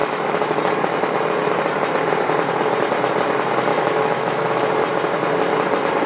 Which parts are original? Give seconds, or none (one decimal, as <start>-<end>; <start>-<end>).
0.6-3.7; 4.6-6.1